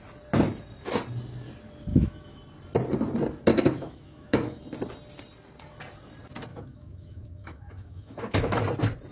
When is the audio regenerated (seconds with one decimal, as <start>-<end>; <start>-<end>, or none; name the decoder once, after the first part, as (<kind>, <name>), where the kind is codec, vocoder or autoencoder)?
1.9-2.4 (autoencoder, DAC-VAE); 3.5-4.6; 6.5-8.6